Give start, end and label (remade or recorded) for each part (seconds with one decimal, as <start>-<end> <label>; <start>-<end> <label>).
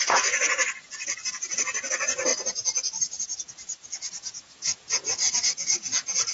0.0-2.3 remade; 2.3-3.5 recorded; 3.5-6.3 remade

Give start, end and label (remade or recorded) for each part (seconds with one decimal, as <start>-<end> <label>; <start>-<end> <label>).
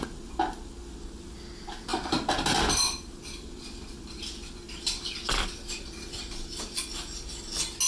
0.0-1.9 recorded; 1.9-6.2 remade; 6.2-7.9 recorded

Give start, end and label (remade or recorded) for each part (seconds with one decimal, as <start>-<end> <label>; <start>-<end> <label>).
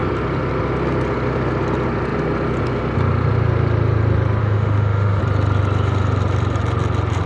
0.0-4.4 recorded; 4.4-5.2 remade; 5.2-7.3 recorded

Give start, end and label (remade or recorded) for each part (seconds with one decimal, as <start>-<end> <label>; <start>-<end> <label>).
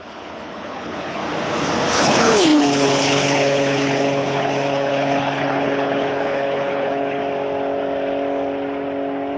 0.0-1.2 remade; 1.2-1.9 recorded; 1.9-7.2 remade; 7.2-9.4 recorded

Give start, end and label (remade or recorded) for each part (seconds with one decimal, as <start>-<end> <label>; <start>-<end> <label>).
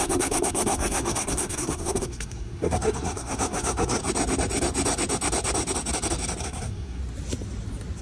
0.0-4.0 remade; 4.0-6.4 recorded; 6.4-7.0 remade; 7.0-8.0 recorded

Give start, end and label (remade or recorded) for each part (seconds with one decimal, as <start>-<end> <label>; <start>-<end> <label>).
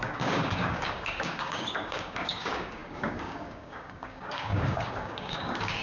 0.0-5.8 remade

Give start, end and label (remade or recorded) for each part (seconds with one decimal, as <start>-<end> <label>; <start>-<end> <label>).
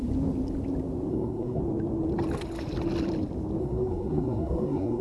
0.0-1.1 recorded; 1.1-1.6 remade; 1.6-3.6 recorded; 3.6-5.0 remade